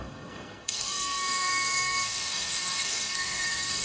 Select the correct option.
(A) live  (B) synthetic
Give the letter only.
B